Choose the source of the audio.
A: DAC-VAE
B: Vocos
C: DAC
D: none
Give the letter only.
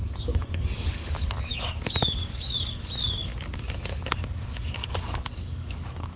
C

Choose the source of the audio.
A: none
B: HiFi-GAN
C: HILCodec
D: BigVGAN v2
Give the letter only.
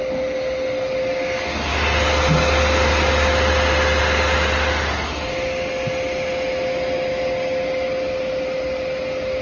A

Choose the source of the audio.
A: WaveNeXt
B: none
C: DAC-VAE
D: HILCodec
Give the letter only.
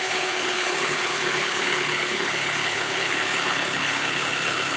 D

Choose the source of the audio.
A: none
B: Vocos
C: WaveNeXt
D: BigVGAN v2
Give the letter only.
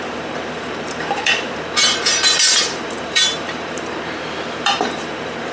D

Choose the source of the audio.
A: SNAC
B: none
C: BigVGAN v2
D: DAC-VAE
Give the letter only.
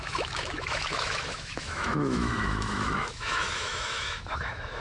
D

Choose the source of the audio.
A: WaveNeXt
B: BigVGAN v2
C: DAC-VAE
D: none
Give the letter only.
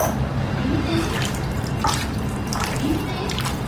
D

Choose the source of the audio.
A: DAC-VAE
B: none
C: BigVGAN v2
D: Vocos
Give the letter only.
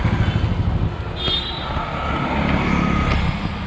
B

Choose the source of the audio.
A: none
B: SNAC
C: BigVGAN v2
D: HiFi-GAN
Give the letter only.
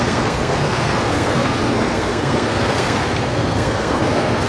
B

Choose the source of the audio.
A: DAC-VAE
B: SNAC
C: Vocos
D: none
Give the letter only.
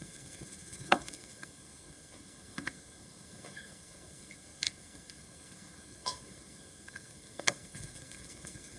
B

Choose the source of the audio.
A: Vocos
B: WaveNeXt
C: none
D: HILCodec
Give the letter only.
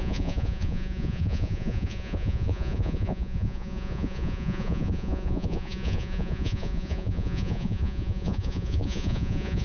A